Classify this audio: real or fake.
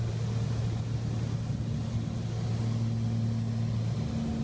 real